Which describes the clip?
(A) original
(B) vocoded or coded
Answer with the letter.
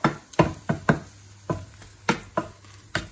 A